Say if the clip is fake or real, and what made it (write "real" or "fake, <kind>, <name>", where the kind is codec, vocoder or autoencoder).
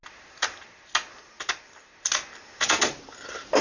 real